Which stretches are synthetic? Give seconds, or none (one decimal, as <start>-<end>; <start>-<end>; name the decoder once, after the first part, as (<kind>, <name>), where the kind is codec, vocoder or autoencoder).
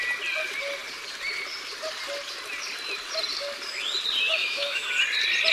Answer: 4.4-4.9 (autoencoder, DAC-VAE)